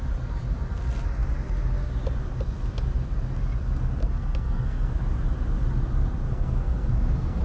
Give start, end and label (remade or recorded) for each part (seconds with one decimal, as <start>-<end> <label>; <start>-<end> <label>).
0.0-4.0 recorded; 4.0-4.9 remade; 4.9-6.3 recorded; 6.3-7.4 remade